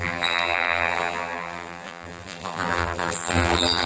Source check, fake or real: fake